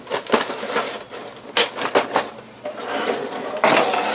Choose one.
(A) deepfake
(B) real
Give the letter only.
B